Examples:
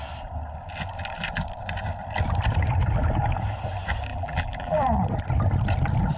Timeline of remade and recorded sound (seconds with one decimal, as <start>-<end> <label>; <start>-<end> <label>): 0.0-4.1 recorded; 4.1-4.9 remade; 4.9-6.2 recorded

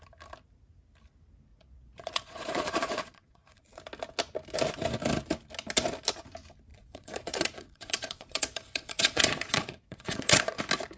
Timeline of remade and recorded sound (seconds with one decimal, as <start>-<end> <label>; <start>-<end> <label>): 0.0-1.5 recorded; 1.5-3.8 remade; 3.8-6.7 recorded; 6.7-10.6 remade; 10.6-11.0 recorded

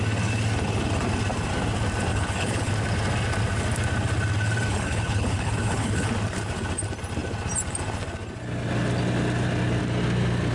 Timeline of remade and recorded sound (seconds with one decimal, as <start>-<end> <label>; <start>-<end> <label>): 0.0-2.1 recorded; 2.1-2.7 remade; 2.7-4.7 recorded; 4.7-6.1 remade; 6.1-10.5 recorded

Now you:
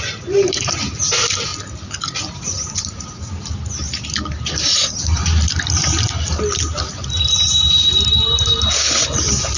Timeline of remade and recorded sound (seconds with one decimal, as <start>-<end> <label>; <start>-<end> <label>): 0.0-1.5 remade; 1.5-2.2 recorded; 2.2-9.6 remade

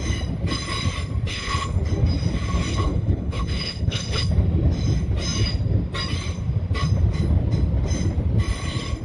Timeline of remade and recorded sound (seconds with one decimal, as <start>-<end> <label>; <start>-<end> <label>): 0.0-1.3 recorded; 1.3-1.8 remade; 1.8-2.7 recorded; 2.7-4.3 remade; 4.3-9.0 recorded

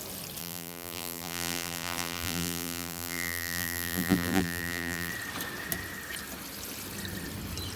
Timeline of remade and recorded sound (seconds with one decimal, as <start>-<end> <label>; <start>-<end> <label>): 0.0-0.4 recorded; 0.4-5.1 remade; 5.1-7.8 recorded

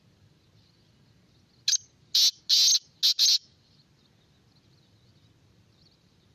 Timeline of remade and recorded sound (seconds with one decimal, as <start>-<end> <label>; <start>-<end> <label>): 0.0-6.3 recorded